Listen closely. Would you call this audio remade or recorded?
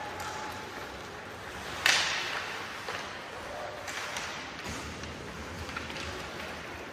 recorded